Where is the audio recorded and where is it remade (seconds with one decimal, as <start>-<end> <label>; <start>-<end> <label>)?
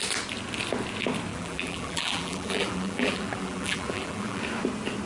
0.0-1.3 recorded; 1.3-4.4 remade; 4.4-5.1 recorded